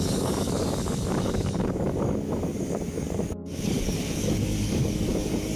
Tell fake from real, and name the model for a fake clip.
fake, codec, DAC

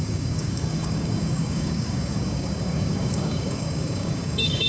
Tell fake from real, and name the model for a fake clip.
fake, codec, DAC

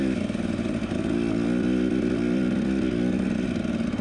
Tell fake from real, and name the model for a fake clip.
real